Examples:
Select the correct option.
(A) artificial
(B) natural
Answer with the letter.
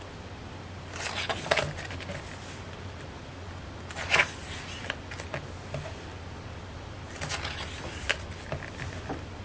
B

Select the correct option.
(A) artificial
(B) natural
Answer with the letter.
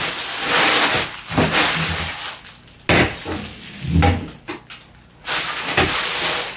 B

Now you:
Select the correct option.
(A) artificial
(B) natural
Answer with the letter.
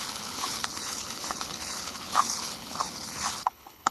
A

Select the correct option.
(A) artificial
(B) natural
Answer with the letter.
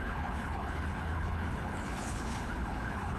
A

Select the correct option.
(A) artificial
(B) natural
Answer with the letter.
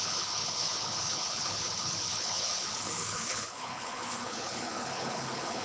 A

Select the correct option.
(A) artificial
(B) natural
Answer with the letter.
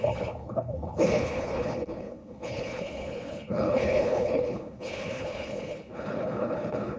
A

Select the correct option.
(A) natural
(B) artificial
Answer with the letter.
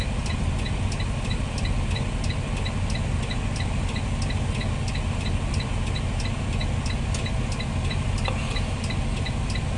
A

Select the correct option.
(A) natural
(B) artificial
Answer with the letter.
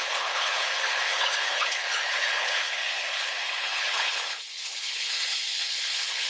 B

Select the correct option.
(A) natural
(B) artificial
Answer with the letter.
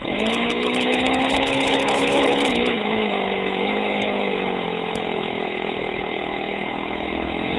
B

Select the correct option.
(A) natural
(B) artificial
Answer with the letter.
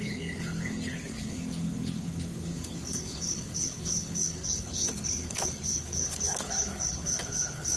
B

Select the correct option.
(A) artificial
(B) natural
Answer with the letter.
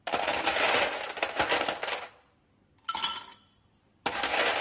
B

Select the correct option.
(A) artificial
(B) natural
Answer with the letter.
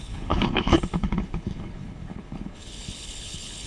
A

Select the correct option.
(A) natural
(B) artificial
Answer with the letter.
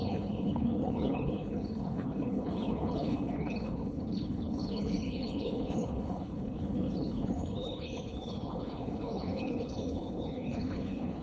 B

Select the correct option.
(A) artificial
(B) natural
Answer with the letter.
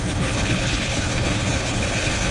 A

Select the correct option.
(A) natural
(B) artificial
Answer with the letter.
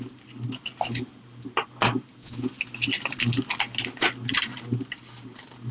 A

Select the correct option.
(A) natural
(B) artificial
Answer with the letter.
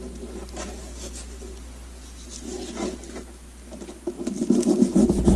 A